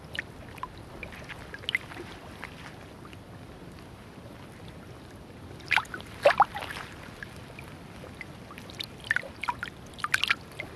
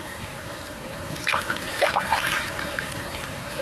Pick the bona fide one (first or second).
first